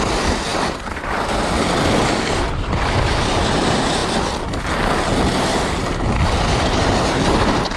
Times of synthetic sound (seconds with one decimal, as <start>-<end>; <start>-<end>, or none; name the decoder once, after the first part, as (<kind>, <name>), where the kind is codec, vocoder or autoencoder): 0.5-2.7 (vocoder, BigVGAN v2)